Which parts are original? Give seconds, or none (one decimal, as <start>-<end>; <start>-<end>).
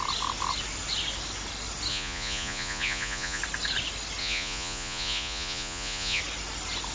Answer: 0.0-1.9; 3.4-4.2; 6.2-6.9